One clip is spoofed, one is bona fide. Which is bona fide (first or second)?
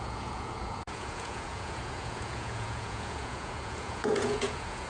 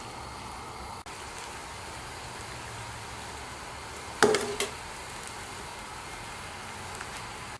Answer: second